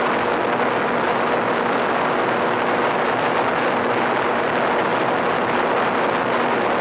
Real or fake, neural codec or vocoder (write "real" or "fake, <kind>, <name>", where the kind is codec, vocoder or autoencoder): real